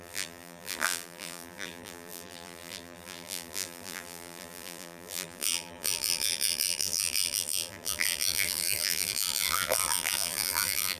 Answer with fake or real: fake